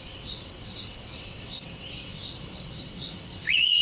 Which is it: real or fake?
fake